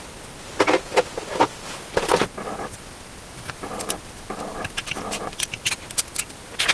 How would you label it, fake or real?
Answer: real